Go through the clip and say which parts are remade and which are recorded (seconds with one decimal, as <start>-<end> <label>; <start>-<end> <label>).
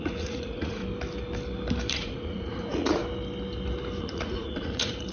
0.0-0.8 remade; 0.8-1.9 recorded; 1.9-3.0 remade; 3.0-4.0 recorded; 4.0-5.1 remade